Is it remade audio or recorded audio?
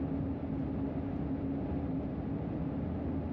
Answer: recorded